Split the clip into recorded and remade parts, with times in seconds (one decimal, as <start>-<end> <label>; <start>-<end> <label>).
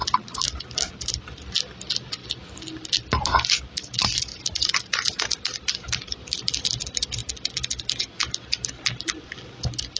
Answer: 0.0-4.3 recorded; 4.3-6.4 remade; 6.4-10.0 recorded